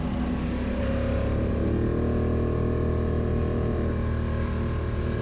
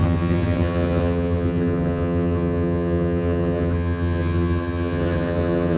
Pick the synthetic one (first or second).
second